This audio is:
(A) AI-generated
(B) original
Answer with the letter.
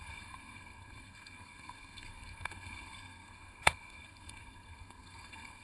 A